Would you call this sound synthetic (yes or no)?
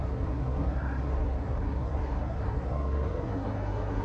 yes